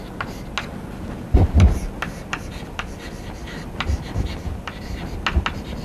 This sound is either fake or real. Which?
real